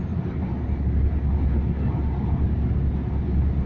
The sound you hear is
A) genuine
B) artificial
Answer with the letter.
A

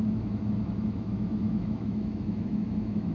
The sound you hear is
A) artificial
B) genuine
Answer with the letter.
A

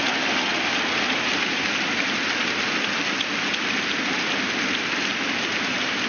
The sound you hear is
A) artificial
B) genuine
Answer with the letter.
B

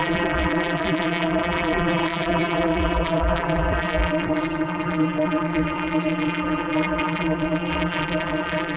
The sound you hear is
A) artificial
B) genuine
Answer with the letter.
A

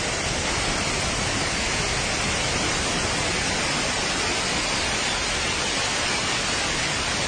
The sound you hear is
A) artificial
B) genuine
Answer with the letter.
B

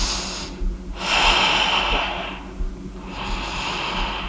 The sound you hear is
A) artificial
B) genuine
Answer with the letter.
B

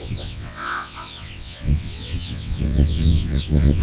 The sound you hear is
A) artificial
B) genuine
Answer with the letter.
A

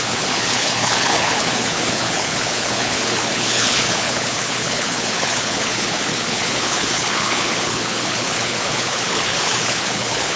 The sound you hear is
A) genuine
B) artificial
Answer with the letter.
B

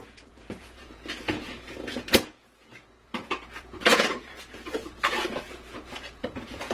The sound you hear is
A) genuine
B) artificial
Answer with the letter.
B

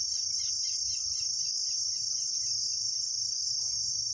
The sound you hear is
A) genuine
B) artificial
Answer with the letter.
A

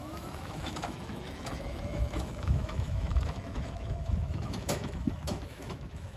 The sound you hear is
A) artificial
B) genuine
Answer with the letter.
A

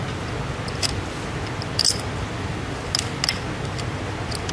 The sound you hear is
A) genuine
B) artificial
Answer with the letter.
A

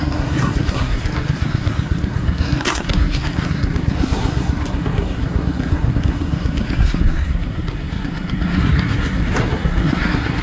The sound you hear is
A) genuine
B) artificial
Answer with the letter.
B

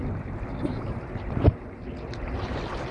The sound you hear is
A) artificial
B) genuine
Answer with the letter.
B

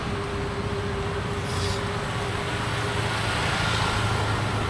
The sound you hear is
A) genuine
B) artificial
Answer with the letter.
A